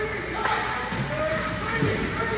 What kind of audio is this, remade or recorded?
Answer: recorded